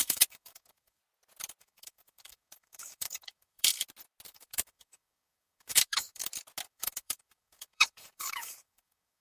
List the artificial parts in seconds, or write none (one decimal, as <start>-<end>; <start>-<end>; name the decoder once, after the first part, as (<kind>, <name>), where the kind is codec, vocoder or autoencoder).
0.0-1.0 (codec, DAC); 1.6-3.7; 4.3-6.2; 6.7-9.2

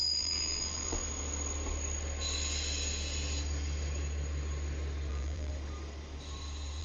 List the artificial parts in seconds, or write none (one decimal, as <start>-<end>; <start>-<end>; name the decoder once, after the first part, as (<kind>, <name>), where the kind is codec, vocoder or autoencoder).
0.0-1.0 (vocoder, BigVGAN v2); 5.1-5.5